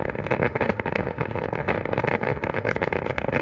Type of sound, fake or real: fake